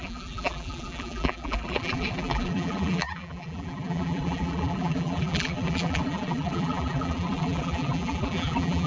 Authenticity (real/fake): fake